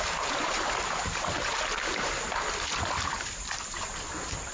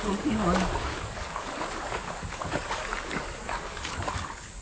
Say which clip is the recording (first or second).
first